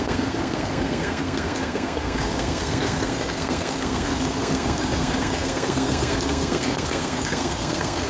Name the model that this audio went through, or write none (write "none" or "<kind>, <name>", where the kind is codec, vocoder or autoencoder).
codec, SNAC